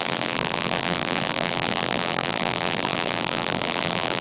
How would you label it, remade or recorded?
remade